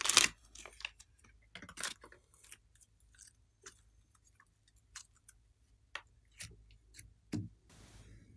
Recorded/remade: recorded